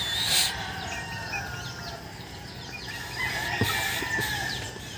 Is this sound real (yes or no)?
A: yes